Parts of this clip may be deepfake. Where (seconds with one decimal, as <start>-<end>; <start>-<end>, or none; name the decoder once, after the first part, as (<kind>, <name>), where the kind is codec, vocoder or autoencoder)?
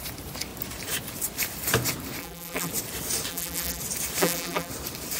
2.2-2.7 (vocoder, BigVGAN v2); 3.3-3.8; 4.2-4.7